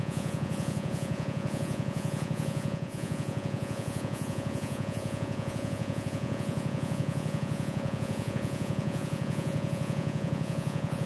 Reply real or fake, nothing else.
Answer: fake